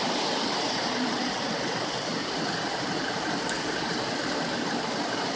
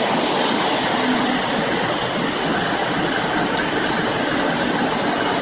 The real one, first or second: second